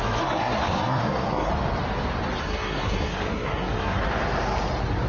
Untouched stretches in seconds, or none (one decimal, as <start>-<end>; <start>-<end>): 1.5-2.4; 4.0-5.1